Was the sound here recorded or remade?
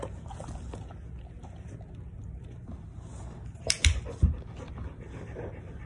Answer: recorded